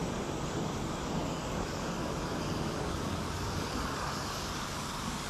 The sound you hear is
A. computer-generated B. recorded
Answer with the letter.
A